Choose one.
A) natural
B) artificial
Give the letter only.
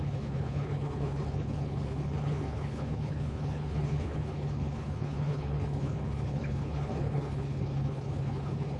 B